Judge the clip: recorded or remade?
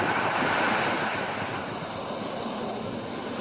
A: recorded